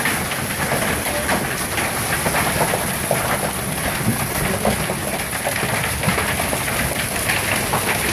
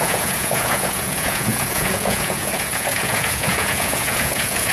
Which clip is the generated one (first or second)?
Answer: second